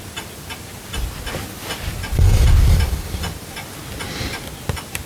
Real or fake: real